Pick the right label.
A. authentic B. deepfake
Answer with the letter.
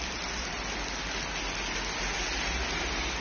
A